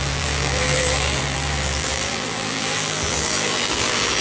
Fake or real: fake